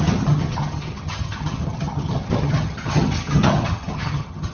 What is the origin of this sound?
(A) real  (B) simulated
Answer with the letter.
B